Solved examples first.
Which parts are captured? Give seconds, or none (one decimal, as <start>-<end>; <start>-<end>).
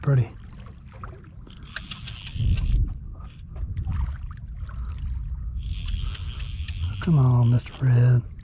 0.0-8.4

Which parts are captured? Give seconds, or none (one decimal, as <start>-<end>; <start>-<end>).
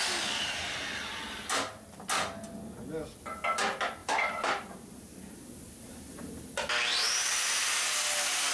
0.0-4.0; 6.4-8.5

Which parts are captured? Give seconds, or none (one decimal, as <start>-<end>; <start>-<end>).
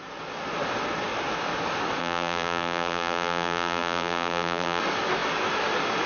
0.0-2.0; 4.8-6.1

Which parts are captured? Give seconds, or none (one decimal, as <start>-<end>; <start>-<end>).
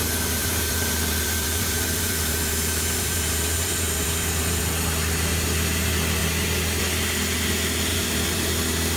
0.0-0.4; 4.6-7.9; 8.5-9.0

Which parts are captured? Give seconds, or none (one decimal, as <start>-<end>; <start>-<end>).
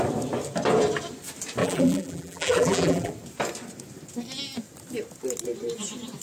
0.0-1.6; 3.1-6.2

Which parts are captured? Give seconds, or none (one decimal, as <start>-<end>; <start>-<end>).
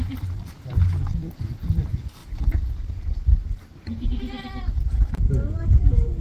2.2-2.9; 3.4-4.7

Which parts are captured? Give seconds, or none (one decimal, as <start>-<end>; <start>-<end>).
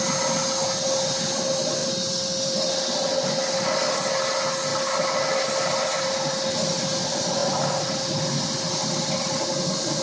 0.0-1.8; 4.1-4.7; 6.8-7.4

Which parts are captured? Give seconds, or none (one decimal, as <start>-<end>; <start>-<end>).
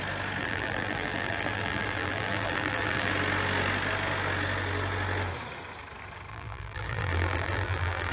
0.0-0.4; 3.1-6.3